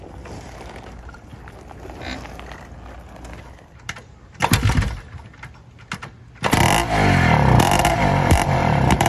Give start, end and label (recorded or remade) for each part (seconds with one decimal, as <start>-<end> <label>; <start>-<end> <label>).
0.0-1.3 remade; 1.3-3.4 recorded; 3.4-4.4 remade; 4.4-7.9 recorded; 7.9-9.1 remade

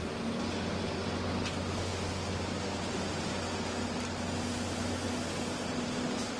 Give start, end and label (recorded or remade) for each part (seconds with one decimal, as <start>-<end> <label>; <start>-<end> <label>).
0.0-6.4 recorded

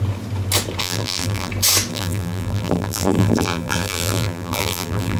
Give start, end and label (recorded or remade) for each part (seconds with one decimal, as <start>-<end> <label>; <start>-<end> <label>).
0.0-0.8 recorded; 0.8-1.5 remade; 1.5-1.9 recorded; 1.9-5.2 remade

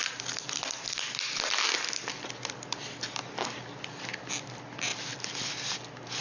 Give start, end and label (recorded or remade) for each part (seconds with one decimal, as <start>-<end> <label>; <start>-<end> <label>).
0.0-2.1 recorded; 2.1-4.9 remade; 4.9-6.2 recorded